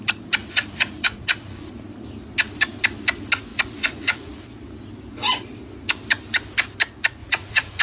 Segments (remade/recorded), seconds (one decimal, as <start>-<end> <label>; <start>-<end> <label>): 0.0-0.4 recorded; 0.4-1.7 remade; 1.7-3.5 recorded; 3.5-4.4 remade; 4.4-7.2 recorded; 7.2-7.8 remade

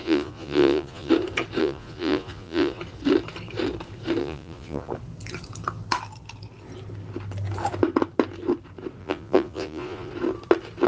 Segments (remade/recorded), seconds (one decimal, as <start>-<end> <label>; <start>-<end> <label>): 0.0-1.1 remade; 1.1-1.6 recorded; 1.6-2.8 remade; 2.8-4.2 recorded; 4.2-4.9 remade; 4.9-9.0 recorded; 9.0-10.1 remade; 10.1-10.9 recorded

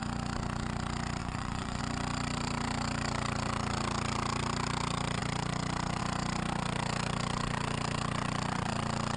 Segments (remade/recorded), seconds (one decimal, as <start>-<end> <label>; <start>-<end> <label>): 0.0-1.2 recorded; 1.2-1.8 remade; 1.8-9.2 recorded